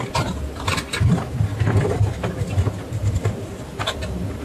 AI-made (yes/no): no